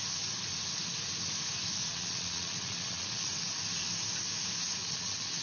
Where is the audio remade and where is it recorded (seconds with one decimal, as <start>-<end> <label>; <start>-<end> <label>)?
0.0-1.8 recorded; 1.8-3.3 remade; 3.3-4.8 recorded; 4.8-5.4 remade